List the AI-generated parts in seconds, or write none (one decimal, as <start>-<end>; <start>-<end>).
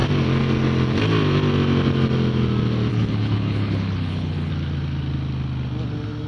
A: 2.9-4.5